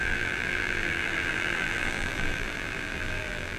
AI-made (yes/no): yes